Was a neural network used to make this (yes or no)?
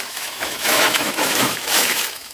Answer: yes